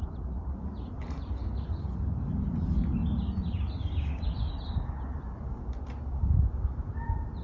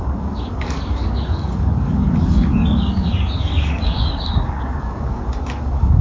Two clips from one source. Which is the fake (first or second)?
second